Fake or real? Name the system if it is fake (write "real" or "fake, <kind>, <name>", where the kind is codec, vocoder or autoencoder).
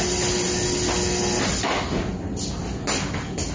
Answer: real